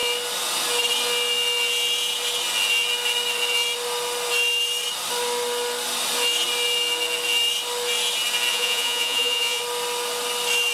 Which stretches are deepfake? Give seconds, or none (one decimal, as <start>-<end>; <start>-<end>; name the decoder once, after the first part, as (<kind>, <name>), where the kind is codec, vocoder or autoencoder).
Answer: 8.5-9.6 (vocoder, Vocos)